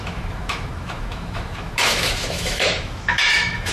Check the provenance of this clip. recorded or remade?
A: remade